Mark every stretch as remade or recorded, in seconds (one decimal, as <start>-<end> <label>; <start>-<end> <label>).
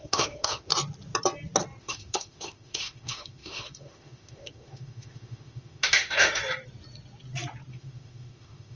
0.0-0.7 remade; 0.7-1.8 recorded; 1.8-6.4 remade; 6.4-7.7 recorded; 7.7-8.8 remade